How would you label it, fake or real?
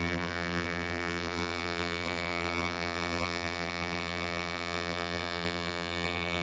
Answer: fake